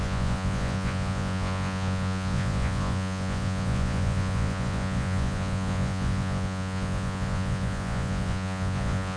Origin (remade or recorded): remade